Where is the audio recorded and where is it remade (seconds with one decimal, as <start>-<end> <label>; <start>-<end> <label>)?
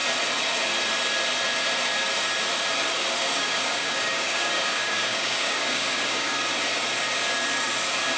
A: 0.0-3.3 recorded; 3.3-6.3 remade; 6.3-8.2 recorded